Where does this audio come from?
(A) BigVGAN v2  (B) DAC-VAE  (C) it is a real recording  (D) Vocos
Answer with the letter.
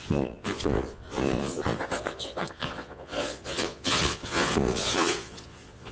D